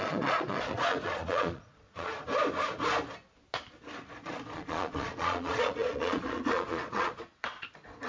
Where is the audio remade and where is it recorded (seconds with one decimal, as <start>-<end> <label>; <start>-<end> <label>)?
0.0-2.1 remade; 2.1-4.1 recorded; 4.1-8.1 remade

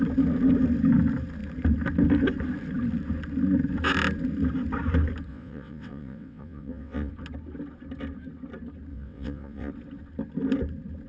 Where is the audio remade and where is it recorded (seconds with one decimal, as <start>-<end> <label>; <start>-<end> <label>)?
0.0-5.3 recorded; 5.3-7.1 remade; 7.1-8.9 recorded; 8.9-9.7 remade; 9.7-11.1 recorded

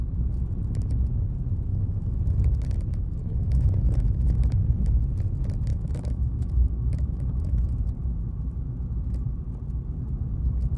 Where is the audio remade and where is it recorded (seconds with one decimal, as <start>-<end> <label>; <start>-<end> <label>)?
0.0-1.7 recorded; 1.7-2.2 remade; 2.2-2.9 recorded; 2.9-4.4 remade; 4.4-5.7 recorded; 5.7-7.6 remade; 7.6-10.8 recorded

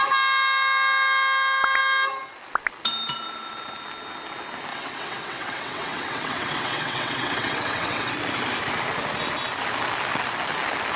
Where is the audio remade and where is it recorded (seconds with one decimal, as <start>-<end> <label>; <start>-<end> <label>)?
0.0-4.7 recorded; 4.7-8.1 remade; 8.1-11.0 recorded

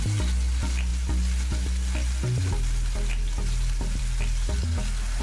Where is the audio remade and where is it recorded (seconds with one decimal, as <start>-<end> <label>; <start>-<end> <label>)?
0.0-5.2 recorded

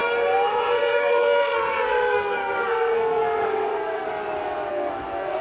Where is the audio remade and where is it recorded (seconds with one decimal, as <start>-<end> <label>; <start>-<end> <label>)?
0.0-4.1 remade; 4.1-4.7 recorded; 4.7-5.4 remade